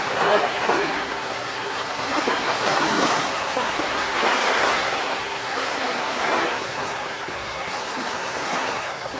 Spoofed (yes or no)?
yes